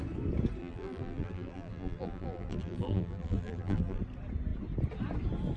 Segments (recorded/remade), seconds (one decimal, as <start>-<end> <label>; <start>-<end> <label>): 0.0-0.6 recorded; 0.6-4.0 remade; 4.0-5.6 recorded